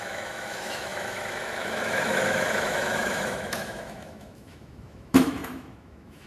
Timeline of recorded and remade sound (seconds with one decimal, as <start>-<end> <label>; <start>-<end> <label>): 0.0-6.3 remade